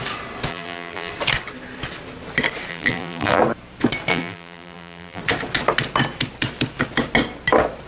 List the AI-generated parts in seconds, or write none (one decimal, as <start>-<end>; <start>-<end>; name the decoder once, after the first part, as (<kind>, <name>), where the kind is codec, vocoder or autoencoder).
0.5-1.1 (vocoder, BigVGAN v2); 2.7-3.4; 4.1-5.2